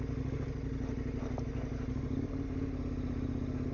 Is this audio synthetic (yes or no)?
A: no